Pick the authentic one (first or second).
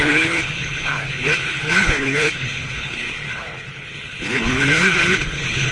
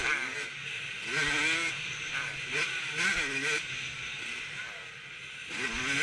second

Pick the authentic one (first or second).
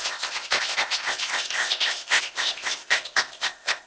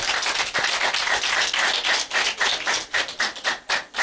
second